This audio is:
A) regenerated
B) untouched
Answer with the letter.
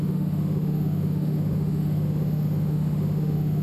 A